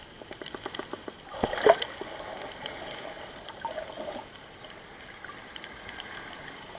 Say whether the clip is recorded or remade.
recorded